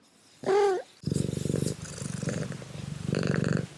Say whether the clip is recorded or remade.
recorded